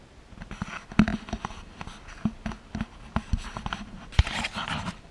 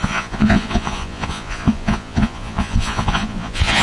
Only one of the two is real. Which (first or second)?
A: first